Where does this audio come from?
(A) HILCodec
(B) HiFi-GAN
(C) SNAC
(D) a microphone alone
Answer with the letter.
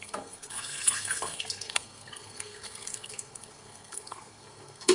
C